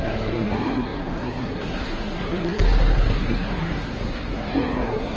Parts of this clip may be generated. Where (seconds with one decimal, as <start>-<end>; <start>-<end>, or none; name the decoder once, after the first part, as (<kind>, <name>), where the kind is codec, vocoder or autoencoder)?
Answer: 0.0-5.2 (codec, SNAC)